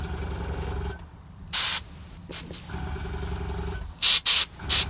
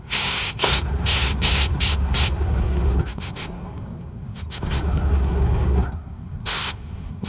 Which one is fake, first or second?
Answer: second